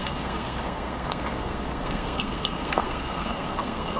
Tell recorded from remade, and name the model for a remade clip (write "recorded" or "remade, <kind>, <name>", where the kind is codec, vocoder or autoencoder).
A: remade, codec, SNAC